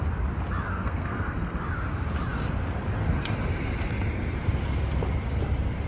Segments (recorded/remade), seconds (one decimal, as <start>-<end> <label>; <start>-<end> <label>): 0.0-0.7 recorded; 0.7-1.6 remade; 1.6-5.9 recorded